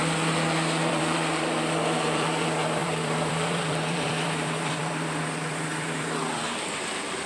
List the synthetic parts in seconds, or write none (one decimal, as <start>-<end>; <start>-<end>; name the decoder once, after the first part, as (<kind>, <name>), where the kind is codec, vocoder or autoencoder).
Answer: 0.9-7.3 (vocoder, BigVGAN v2)